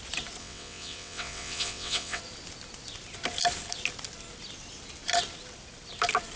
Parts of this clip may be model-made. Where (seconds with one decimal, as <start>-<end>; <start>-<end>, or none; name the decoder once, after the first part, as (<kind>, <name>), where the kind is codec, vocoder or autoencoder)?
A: 0.4-2.2 (vocoder, WaveNeXt)